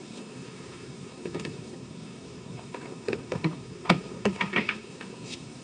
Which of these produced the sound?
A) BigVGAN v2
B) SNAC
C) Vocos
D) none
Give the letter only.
B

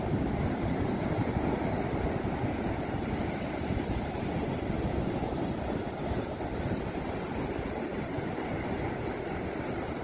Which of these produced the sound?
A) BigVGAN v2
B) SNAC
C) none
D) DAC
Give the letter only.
C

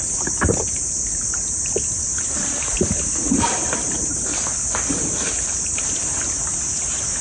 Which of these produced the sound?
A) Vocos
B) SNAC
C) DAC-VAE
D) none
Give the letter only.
D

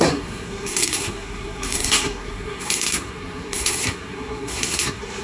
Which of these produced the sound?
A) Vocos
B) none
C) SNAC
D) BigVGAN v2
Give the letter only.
C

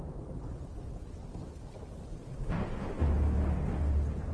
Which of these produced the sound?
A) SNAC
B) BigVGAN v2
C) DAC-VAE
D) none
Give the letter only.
D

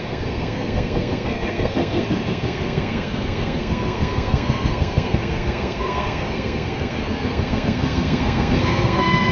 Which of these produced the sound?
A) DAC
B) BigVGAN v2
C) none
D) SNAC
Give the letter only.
D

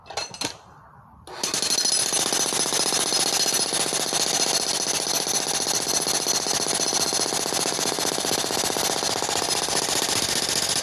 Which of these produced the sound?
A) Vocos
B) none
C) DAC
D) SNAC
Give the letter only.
B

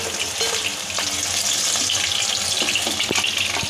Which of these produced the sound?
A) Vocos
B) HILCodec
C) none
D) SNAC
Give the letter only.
C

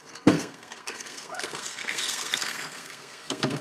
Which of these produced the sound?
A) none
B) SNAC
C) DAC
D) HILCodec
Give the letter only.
B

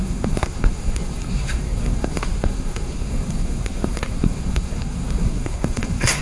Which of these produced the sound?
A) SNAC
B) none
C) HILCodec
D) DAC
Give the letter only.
A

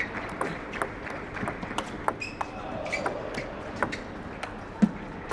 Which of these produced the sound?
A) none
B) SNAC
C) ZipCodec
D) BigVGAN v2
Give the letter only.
A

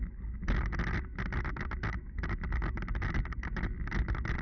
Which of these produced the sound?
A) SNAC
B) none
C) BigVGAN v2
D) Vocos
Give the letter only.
B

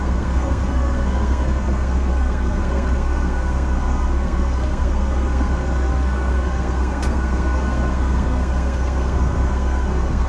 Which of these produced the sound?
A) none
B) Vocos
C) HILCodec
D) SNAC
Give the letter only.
D